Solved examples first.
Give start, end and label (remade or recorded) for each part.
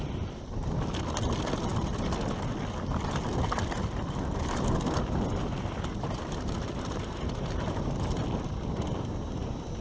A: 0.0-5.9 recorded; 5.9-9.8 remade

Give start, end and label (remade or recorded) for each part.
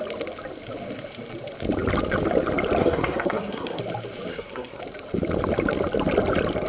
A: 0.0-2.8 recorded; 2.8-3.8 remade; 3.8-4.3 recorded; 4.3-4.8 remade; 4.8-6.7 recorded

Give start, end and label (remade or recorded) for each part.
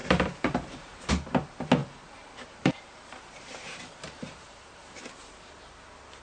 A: 0.0-1.1 remade; 1.1-1.8 recorded; 1.8-5.5 remade; 5.5-6.2 recorded